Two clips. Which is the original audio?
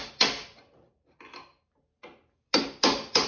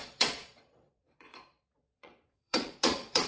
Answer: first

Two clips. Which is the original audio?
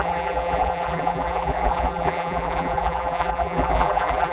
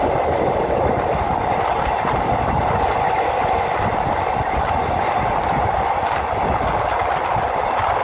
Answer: second